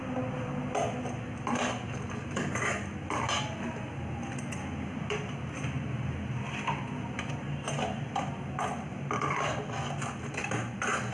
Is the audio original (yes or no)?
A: yes